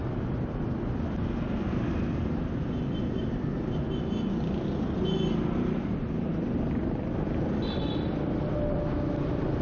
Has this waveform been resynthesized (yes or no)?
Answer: no